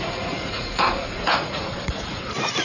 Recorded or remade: remade